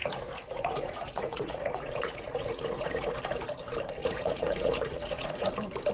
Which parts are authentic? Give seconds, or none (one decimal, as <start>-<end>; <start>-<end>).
3.1-4.0; 5.5-5.9